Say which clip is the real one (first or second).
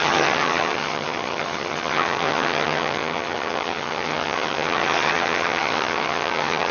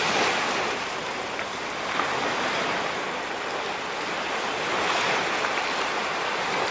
second